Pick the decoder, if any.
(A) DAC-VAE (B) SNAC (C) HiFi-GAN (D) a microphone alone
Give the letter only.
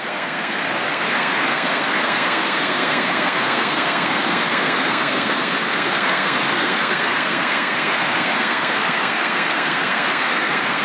B